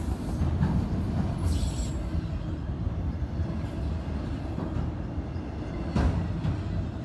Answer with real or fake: real